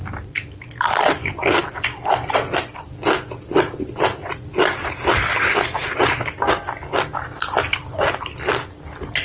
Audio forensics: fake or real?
real